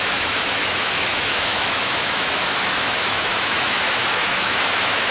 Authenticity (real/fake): fake